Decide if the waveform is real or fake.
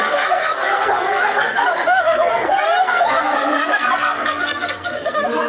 fake